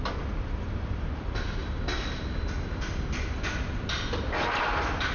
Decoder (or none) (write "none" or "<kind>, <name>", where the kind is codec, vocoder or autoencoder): none